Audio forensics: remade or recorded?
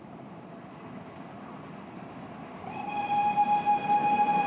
recorded